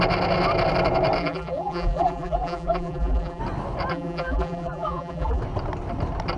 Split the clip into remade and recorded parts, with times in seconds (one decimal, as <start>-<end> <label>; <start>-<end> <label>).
0.0-1.2 recorded; 1.2-3.4 remade; 3.4-3.9 recorded; 3.9-5.4 remade; 5.4-6.4 recorded